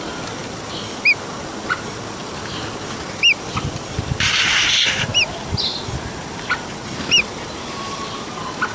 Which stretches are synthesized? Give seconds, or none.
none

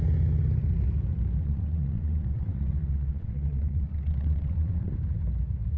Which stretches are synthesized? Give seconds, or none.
1.4-4.9 (vocoder, WaveNeXt)

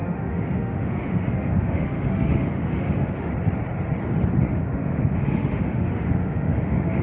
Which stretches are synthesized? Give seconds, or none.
0.0-3.3 (autoencoder, DAC-VAE); 4.5-7.0

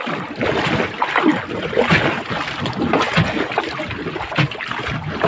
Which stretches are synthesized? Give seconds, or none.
none